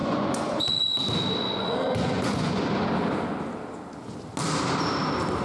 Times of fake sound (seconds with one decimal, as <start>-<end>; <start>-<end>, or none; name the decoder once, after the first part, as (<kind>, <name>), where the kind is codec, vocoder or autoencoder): 0.0-0.7 (vocoder, Vocos); 1.4-2.6